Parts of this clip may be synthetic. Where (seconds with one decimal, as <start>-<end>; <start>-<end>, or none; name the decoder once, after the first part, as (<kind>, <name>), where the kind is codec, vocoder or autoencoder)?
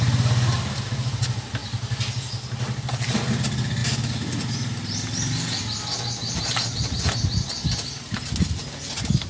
none